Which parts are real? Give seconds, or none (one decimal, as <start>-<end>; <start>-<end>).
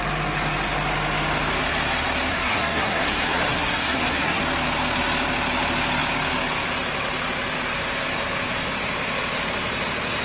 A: 0.0-2.3; 4.4-10.2